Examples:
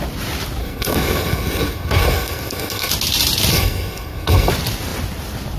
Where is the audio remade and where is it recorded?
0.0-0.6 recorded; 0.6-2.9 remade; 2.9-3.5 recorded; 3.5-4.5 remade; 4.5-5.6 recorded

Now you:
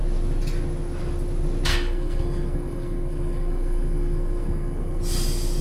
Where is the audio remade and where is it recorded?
0.0-1.7 recorded; 1.7-5.0 remade; 5.0-5.6 recorded

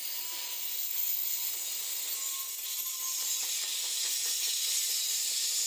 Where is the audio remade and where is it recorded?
0.0-2.0 remade; 2.0-5.7 recorded

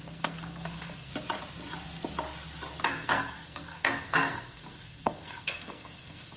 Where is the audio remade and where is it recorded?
0.0-1.1 remade; 1.1-2.8 recorded; 2.8-6.4 remade